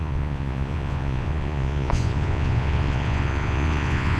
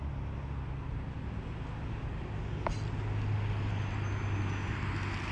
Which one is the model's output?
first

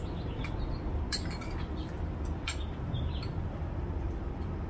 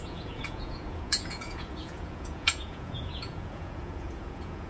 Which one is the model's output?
second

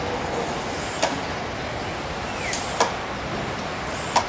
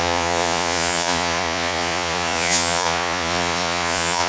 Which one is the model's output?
second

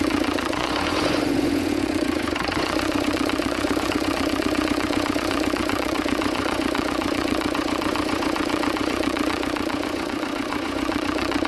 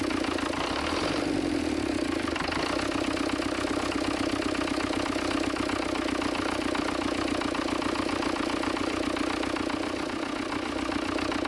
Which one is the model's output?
first